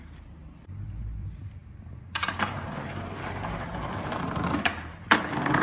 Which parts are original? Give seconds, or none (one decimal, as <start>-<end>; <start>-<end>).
0.4-1.0